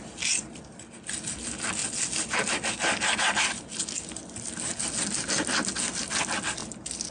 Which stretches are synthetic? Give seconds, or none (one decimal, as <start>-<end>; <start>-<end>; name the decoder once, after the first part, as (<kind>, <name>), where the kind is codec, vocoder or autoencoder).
none